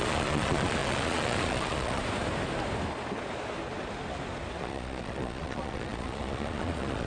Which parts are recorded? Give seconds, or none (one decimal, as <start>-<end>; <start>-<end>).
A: 2.0-4.6